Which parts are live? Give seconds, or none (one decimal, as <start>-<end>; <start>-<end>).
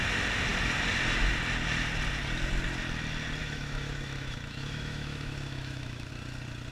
0.0-3.4; 6.1-6.7